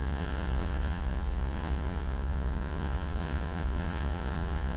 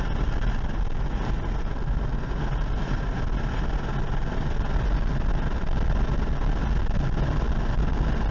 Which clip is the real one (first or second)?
second